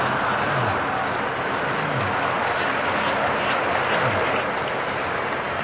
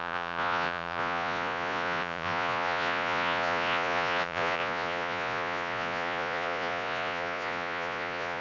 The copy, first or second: second